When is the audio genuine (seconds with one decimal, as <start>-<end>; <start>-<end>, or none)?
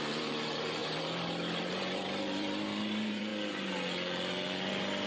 3.3-5.1